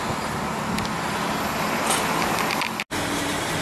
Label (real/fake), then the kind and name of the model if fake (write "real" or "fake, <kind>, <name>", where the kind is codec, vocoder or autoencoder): real